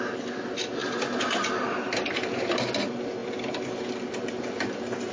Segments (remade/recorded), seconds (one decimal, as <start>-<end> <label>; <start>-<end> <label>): 0.0-5.1 recorded